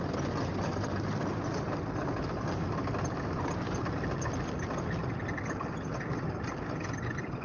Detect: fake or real real